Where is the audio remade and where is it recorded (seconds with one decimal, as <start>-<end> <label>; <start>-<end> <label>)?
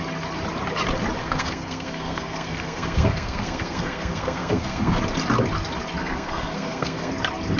0.0-1.2 recorded; 1.2-5.0 remade; 5.0-6.0 recorded; 6.0-7.1 remade; 7.1-7.6 recorded